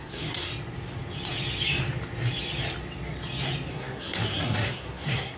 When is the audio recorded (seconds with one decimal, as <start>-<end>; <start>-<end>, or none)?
0.5-3.7